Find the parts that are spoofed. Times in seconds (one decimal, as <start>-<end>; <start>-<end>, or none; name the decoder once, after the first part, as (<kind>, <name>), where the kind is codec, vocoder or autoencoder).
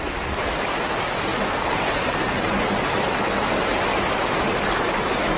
none